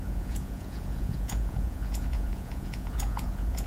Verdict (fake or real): fake